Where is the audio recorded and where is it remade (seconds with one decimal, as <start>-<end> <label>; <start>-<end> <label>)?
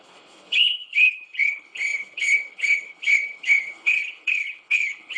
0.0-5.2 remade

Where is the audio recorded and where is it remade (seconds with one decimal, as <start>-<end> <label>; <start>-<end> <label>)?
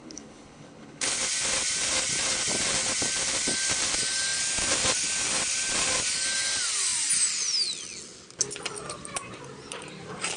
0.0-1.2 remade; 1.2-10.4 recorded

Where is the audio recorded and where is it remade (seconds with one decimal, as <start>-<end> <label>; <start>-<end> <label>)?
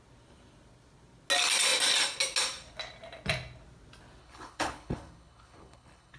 0.0-4.2 recorded; 4.2-6.2 remade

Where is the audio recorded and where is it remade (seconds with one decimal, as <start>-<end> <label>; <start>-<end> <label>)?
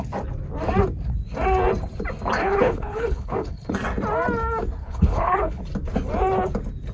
0.0-2.4 recorded; 2.4-3.7 remade; 3.7-4.8 recorded; 4.8-5.6 remade; 5.6-6.9 recorded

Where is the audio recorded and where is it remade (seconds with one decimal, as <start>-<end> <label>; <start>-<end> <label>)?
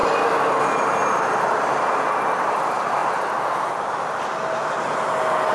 0.0-5.5 recorded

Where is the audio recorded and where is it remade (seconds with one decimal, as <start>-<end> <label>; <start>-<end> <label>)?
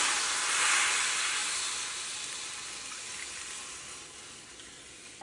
0.0-5.2 recorded